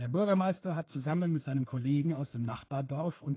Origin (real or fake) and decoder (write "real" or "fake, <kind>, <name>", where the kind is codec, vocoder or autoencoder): fake, codec, SNAC